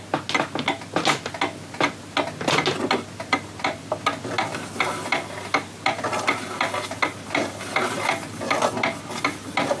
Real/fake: real